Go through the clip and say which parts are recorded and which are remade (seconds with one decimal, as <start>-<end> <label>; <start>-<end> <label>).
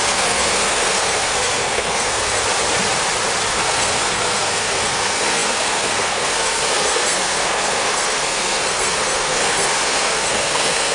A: 0.0-2.4 remade; 2.4-3.5 recorded; 3.5-10.9 remade